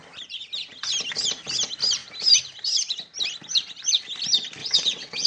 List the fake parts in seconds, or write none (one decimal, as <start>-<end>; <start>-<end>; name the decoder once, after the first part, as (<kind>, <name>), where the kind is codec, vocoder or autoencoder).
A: 4.6-5.3 (vocoder, WaveNeXt)